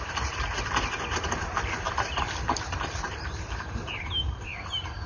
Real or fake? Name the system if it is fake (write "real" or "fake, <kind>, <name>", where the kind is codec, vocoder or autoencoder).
fake, vocoder, BigVGAN v2